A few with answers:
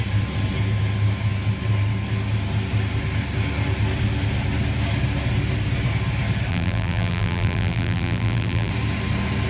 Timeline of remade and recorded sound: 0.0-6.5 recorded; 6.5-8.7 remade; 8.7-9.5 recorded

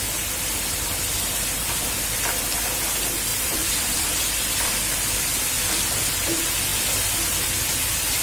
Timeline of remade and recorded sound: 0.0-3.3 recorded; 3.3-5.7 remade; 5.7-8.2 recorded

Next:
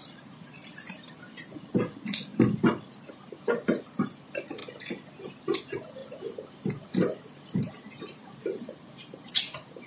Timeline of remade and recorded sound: 0.0-4.6 remade; 4.6-5.2 recorded; 5.2-6.0 remade; 6.0-7.7 recorded; 7.7-9.9 remade

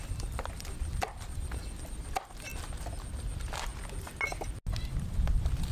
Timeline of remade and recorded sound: 0.0-2.5 remade; 2.5-3.2 recorded; 3.2-3.7 remade; 3.7-5.0 recorded; 5.0-5.7 remade